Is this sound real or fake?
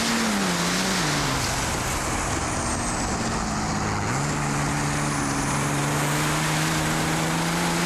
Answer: real